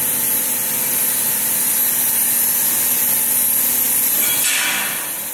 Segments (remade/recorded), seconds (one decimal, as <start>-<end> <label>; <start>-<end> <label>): 0.0-5.3 recorded